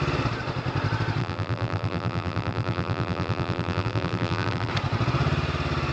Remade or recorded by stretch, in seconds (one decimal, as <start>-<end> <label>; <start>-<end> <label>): 0.0-1.2 recorded; 1.2-4.7 remade; 4.7-5.9 recorded